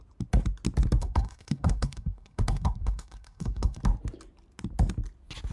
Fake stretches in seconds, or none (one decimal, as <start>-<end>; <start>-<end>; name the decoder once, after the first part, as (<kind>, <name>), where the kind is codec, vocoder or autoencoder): 1.0-3.8 (codec, SNAC)